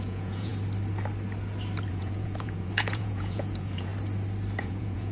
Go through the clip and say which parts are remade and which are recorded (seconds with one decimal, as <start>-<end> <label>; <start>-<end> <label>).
0.0-0.5 remade; 0.5-1.9 recorded; 1.9-3.9 remade; 3.9-4.6 recorded; 4.6-5.1 remade